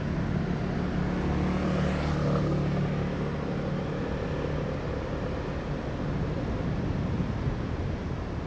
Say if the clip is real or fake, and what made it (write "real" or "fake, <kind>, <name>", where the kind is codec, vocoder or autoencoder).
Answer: real